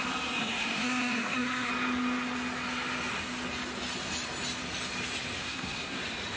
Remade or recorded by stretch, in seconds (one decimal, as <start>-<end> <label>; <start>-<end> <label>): 0.0-0.4 recorded; 0.4-1.7 remade; 1.7-5.4 recorded; 5.4-6.0 remade; 6.0-6.4 recorded